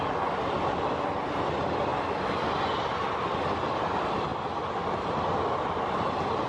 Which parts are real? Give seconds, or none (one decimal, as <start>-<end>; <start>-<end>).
0.0-6.5